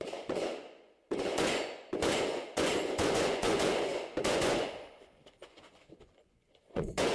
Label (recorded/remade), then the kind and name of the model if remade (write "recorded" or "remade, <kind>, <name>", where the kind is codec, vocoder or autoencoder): remade, vocoder, Vocos